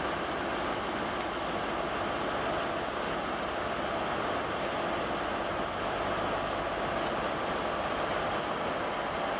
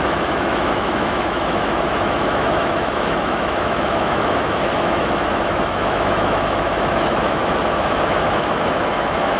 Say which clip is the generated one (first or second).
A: second